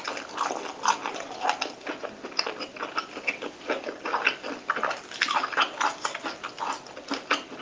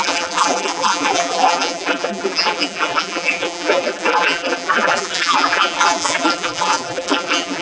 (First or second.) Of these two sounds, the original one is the first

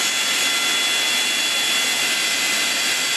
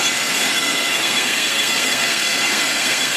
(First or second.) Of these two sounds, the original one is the first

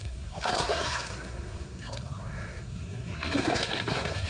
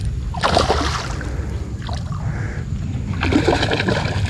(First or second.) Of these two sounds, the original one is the second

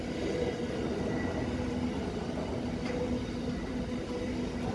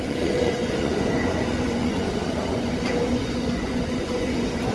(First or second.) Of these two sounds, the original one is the first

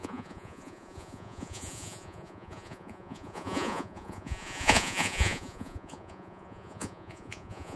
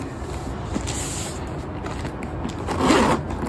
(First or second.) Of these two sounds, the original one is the second